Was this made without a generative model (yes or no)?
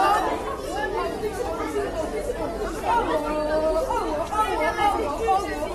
yes